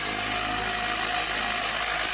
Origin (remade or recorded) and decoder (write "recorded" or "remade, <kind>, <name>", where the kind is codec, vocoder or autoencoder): recorded